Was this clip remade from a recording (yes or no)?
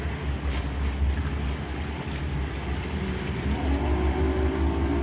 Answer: no